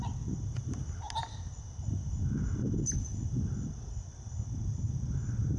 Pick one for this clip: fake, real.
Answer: real